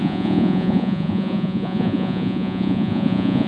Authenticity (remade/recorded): remade